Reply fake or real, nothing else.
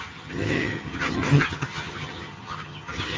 fake